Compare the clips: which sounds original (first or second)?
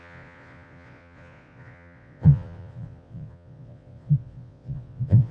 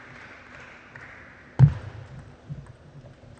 second